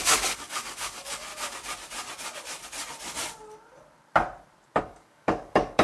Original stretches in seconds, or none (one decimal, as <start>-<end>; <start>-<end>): 1.3-4.8